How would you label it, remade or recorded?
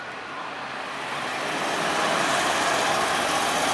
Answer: recorded